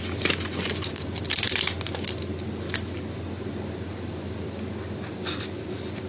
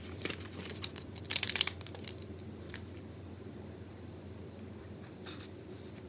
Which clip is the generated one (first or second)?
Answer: second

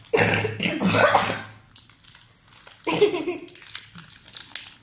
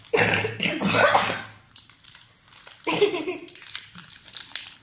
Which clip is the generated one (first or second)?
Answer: second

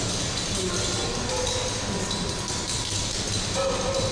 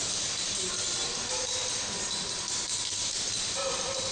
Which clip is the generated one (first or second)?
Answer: second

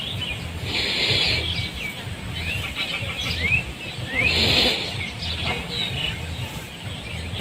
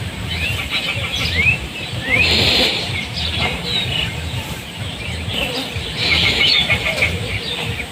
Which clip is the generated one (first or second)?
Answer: second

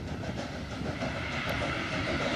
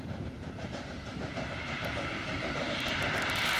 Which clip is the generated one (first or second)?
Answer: second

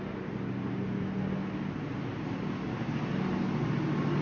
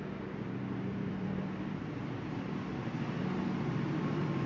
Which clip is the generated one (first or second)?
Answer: second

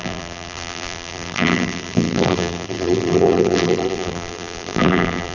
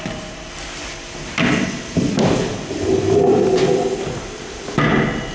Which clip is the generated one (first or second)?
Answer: first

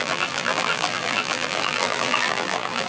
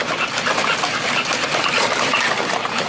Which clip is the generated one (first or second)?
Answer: first